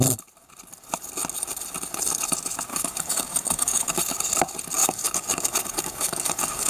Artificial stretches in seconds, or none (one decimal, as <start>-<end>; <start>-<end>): 2.7-4.0; 4.8-6.7